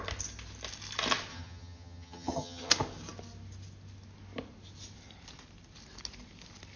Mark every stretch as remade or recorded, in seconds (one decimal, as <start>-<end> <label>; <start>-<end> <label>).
0.0-1.3 recorded; 1.3-2.7 remade; 2.7-6.8 recorded